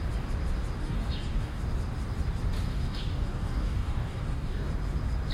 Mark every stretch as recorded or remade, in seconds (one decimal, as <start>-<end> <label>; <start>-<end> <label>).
0.0-0.8 recorded; 0.8-1.6 remade; 1.6-2.7 recorded; 2.7-4.7 remade; 4.7-5.3 recorded